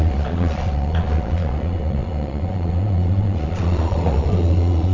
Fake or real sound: fake